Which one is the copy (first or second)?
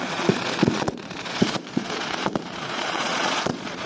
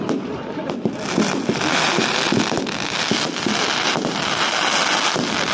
first